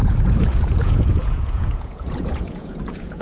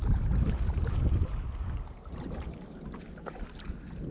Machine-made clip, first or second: first